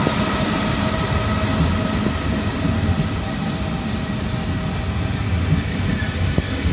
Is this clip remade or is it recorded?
recorded